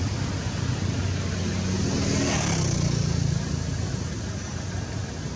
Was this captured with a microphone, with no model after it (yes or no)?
yes